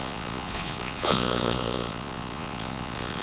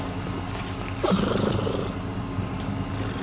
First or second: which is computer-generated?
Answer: first